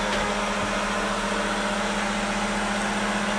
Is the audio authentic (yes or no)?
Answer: yes